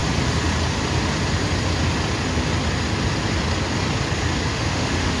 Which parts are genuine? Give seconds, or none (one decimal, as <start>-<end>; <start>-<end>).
0.0-4.5